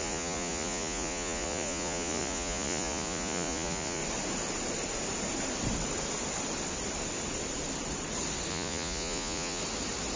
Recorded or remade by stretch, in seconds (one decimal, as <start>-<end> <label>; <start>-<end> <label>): 0.0-4.0 remade; 4.0-8.5 recorded; 8.5-9.6 remade; 9.6-10.2 recorded

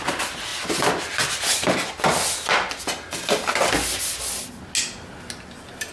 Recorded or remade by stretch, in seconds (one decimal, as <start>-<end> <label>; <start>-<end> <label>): 0.0-5.9 recorded

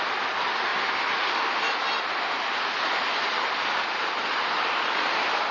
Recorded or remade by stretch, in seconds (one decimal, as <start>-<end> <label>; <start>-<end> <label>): 0.0-5.5 recorded

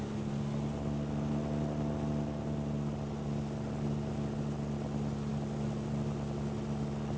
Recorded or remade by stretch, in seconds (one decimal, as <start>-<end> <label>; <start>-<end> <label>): 0.0-7.2 recorded